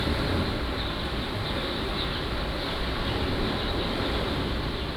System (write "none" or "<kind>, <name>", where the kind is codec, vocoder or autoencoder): vocoder, BigVGAN v2